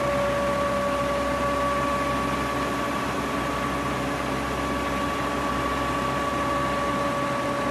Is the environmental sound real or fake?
real